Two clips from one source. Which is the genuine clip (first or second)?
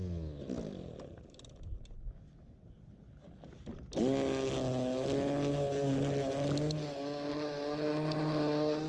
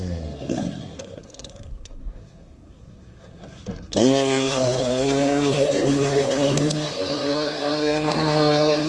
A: first